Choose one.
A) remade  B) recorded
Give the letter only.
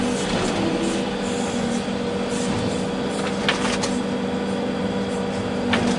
B